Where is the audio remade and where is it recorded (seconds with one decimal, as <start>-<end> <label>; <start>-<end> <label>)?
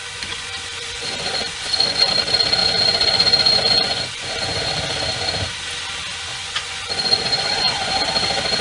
0.0-2.1 remade; 2.1-2.6 recorded; 2.6-4.7 remade; 4.7-6.3 recorded; 6.3-8.0 remade; 8.0-8.6 recorded